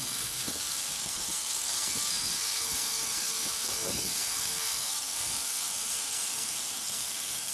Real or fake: fake